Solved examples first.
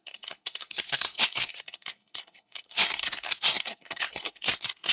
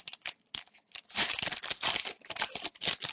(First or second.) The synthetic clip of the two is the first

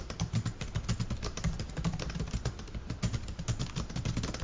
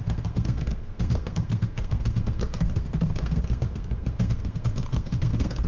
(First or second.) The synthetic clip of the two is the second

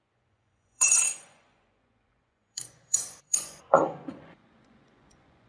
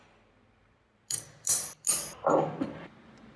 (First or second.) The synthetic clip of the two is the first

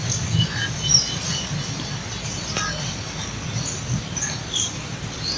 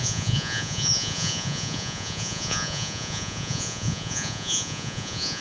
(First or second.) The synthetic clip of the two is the second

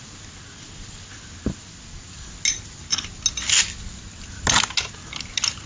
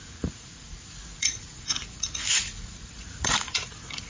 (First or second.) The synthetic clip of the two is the second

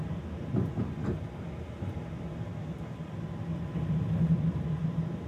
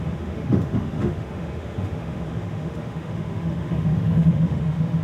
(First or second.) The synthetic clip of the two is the second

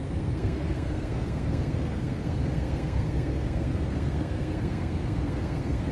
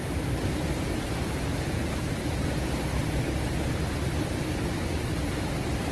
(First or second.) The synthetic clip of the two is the first